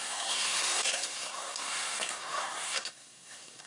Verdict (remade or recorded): remade